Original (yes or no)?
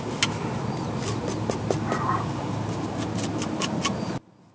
yes